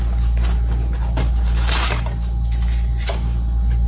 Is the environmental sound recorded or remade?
recorded